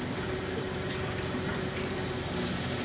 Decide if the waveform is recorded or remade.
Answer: recorded